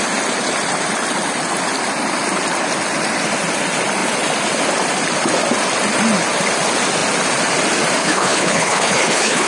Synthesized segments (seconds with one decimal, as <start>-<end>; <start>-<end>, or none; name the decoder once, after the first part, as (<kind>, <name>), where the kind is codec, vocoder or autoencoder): 8.0-9.5 (codec, HILCodec)